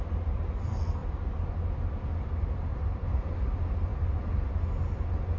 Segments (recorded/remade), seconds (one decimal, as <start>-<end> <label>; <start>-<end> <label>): 0.0-2.1 recorded; 2.1-3.1 remade; 3.1-5.4 recorded